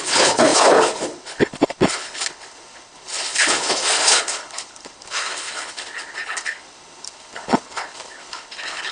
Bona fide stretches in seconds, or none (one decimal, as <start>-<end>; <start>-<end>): none